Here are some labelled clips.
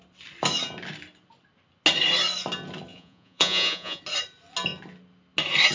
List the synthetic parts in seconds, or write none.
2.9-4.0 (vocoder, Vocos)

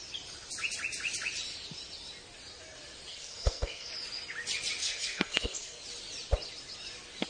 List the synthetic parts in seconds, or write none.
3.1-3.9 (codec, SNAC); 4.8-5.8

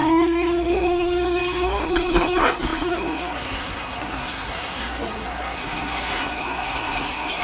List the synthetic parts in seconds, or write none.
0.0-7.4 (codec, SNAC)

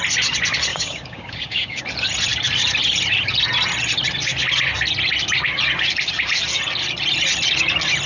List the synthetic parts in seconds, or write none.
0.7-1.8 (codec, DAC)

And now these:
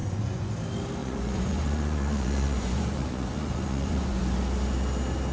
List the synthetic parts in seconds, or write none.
0.0-0.5 (vocoder, Vocos); 1.0-4.2

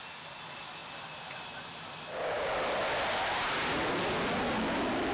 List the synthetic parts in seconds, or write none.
none

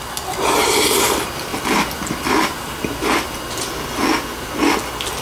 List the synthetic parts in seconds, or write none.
1.5-3.7 (vocoder, BigVGAN v2)

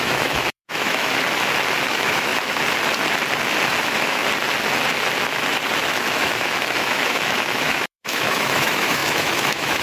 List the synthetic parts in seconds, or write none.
0.0-1.1 (autoencoder, DAC-VAE); 1.9-2.3; 3.8-4.2; 5.9-9.8